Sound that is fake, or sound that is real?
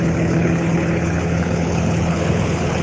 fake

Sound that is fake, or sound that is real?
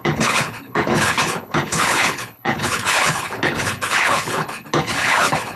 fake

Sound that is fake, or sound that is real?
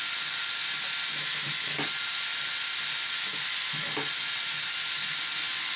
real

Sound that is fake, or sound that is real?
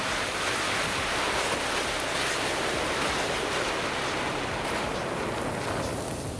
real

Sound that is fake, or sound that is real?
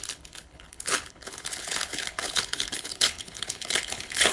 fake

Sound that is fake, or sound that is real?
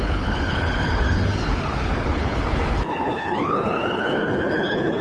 fake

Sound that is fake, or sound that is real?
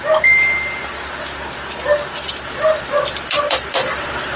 real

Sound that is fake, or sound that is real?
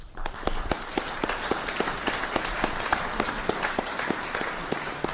real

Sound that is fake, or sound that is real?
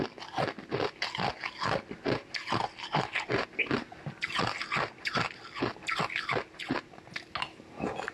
real